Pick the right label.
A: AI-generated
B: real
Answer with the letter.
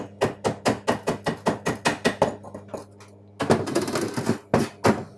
B